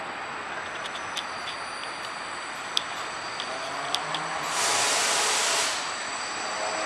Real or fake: real